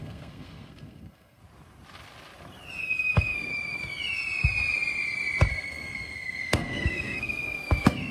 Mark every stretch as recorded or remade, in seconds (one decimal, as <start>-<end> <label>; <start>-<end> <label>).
0.0-1.4 remade; 1.4-2.8 recorded; 2.8-3.5 remade; 3.5-5.5 recorded; 5.5-8.1 remade